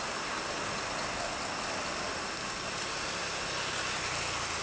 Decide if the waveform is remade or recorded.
recorded